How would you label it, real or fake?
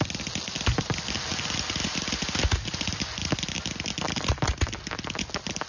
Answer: real